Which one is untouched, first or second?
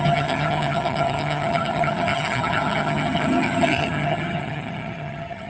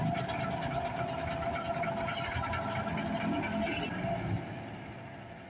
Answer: second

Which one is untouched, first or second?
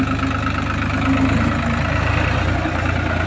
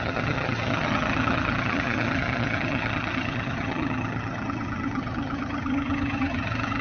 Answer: first